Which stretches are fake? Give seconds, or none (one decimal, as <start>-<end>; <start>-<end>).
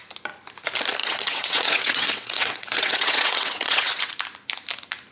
1.0-4.1